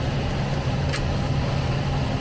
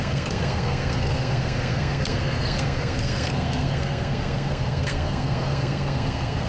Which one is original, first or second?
first